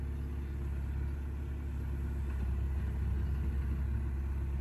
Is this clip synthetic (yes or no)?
no